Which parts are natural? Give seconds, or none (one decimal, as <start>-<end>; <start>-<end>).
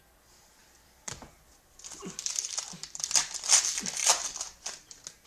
0.0-5.3